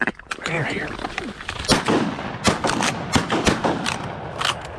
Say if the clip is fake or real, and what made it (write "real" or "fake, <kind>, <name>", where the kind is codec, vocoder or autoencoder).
real